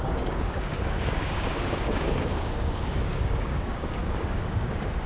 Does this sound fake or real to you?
fake